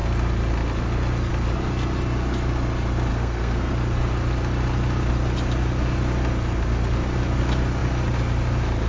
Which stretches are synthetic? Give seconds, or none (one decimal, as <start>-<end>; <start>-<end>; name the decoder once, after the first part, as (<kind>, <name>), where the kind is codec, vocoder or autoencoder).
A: 3.1-3.7 (codec, SNAC)